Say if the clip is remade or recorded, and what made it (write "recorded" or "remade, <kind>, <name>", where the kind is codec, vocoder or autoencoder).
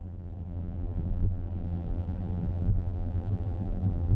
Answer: remade, vocoder, BigVGAN v2